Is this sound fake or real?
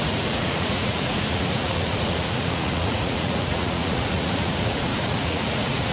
fake